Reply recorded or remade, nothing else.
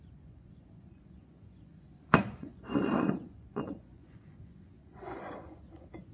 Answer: remade